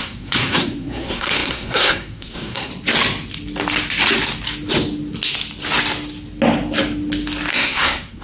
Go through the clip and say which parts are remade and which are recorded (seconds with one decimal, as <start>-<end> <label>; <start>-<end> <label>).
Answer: 0.0-2.7 remade; 2.7-7.5 recorded; 7.5-8.2 remade